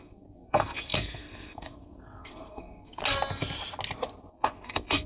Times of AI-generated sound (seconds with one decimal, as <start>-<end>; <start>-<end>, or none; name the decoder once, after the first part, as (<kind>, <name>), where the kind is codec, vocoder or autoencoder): 0.0-3.0 (codec, SNAC); 4.3-5.1